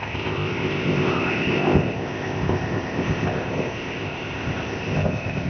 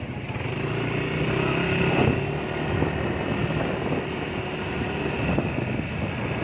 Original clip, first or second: second